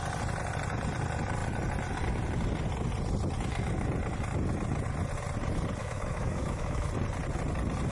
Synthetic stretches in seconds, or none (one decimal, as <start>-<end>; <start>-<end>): 5.8-6.9